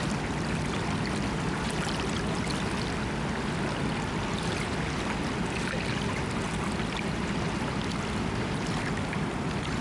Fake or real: real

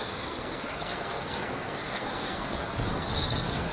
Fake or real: fake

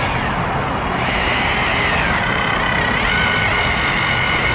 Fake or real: real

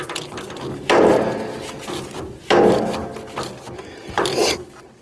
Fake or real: real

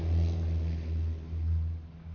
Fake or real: real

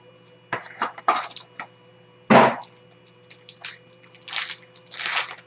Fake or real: real